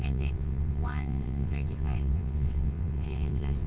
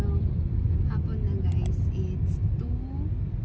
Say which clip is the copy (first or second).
first